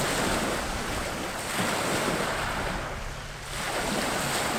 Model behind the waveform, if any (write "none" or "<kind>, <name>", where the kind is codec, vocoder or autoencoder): none